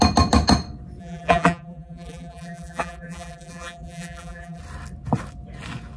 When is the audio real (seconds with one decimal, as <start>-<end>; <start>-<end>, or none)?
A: 0.0-1.0; 4.6-6.0